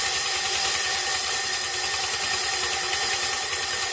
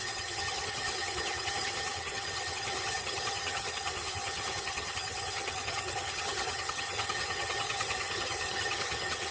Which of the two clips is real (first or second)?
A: first